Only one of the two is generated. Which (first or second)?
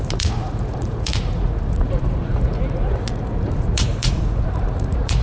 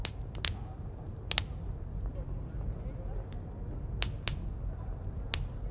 first